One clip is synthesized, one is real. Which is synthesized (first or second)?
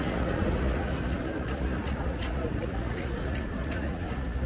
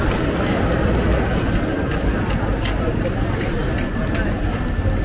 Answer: first